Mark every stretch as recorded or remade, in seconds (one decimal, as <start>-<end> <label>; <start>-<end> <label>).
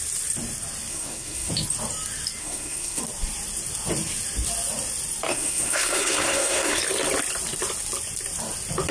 0.0-0.9 recorded; 0.9-1.5 remade; 1.5-2.4 recorded; 2.4-3.0 remade; 3.0-5.3 recorded; 5.3-6.8 remade; 6.8-8.9 recorded